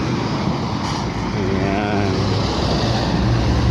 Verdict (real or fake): real